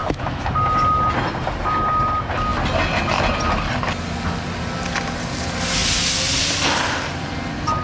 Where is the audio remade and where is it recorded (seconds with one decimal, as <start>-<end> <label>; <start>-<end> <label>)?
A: 0.0-0.5 remade; 0.5-7.8 recorded